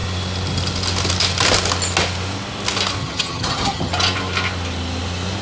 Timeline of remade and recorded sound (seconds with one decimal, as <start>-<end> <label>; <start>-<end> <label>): 0.0-3.0 recorded; 3.0-3.9 remade; 3.9-5.4 recorded